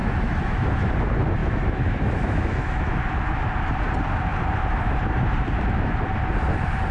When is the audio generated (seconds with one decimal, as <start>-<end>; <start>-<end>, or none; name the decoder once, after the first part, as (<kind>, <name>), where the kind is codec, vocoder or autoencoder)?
0.0-0.9 (autoencoder, DAC-VAE); 1.4-2.9